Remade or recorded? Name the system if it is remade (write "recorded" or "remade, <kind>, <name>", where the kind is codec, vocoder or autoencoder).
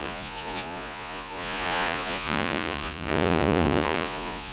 remade, vocoder, Vocos